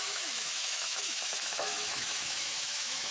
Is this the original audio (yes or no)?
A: no